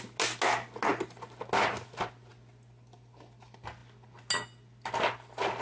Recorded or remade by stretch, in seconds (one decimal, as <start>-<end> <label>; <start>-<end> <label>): 0.0-5.6 recorded